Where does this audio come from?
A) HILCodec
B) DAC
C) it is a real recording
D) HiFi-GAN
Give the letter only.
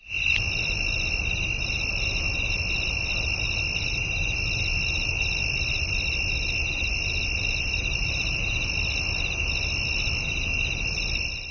C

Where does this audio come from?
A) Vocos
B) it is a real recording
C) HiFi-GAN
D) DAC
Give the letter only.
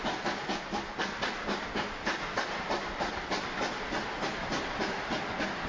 B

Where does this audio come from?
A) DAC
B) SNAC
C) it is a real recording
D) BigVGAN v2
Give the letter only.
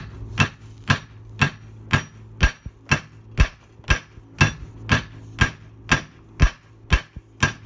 C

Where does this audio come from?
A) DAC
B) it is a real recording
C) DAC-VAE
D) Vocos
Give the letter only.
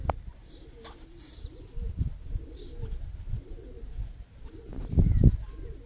B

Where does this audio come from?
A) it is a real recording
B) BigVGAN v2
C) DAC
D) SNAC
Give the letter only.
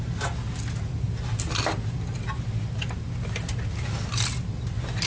A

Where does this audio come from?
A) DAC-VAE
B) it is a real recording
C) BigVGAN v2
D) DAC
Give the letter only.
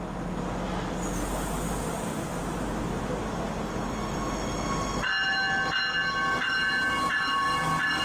B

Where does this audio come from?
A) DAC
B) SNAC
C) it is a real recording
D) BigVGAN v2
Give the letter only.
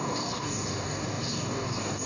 A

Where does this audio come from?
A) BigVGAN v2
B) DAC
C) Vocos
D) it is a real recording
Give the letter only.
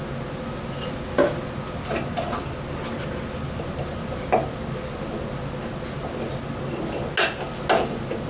D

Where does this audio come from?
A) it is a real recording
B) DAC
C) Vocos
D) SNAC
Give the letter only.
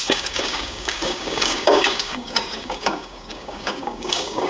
B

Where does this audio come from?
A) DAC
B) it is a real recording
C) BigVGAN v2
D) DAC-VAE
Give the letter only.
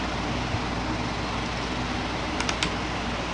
B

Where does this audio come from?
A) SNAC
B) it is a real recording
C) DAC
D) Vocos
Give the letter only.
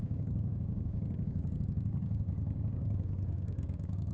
C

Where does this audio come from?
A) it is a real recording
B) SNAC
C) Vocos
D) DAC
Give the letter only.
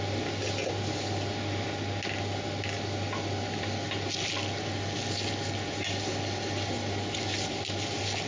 A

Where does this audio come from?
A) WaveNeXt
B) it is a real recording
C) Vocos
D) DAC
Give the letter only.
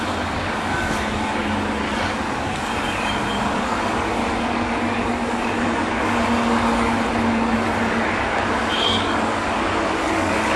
D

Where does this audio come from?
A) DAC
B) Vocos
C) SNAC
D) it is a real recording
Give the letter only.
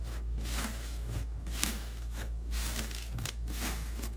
A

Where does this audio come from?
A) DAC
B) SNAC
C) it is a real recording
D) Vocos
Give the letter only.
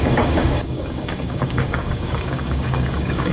A